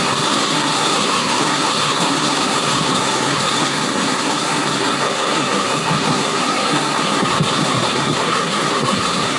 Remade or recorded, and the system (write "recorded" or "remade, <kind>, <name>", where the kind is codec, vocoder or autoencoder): remade, codec, SNAC